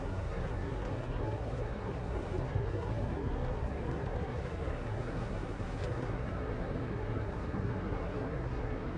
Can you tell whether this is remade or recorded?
remade